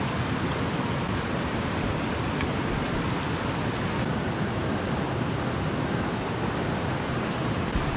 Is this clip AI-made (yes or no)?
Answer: no